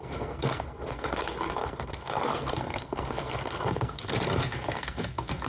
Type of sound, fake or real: fake